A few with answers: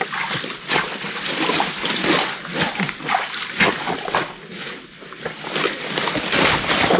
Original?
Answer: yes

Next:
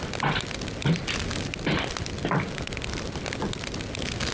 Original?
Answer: yes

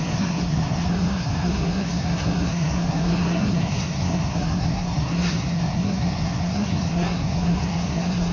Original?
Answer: no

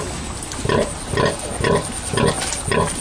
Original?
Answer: yes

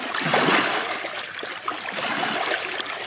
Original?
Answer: yes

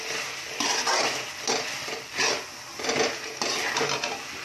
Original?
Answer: yes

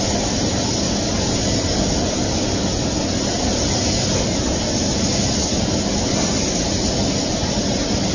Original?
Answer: yes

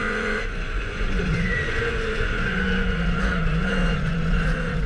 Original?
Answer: no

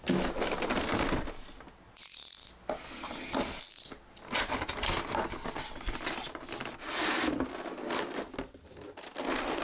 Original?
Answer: yes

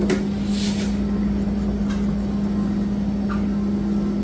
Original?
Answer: yes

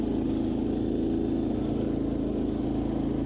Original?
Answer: yes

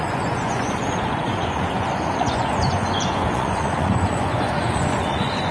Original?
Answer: no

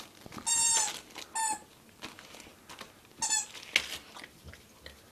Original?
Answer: yes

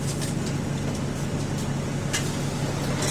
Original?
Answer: yes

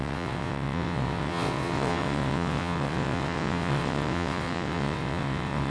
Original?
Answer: no